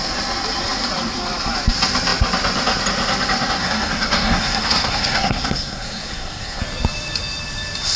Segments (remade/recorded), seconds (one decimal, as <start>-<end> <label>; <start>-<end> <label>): 0.0-3.6 recorded; 3.6-6.6 remade; 6.6-8.0 recorded